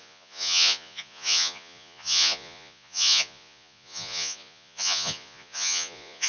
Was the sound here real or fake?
fake